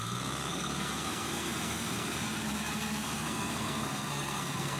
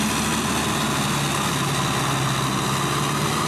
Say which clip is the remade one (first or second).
first